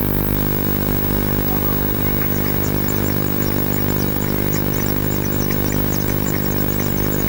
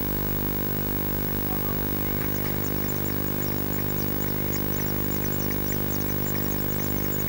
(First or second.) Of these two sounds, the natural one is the second